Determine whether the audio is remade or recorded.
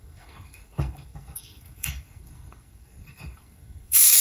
remade